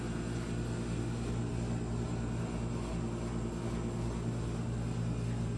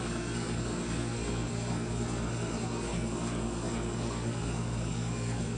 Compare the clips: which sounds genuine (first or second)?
first